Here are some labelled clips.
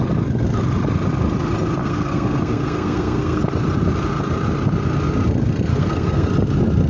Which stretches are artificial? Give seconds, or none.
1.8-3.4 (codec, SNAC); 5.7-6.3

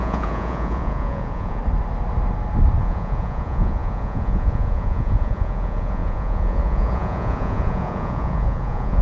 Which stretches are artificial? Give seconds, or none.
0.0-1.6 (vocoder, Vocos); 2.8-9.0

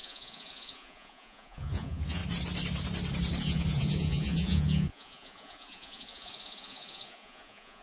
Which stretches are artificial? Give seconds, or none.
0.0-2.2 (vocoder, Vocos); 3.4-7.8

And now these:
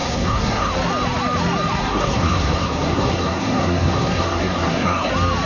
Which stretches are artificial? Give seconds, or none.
0.0-0.7 (codec, SNAC); 1.8-5.1